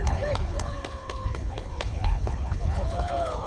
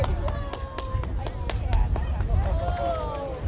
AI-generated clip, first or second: first